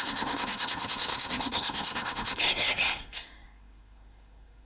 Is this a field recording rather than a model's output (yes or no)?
no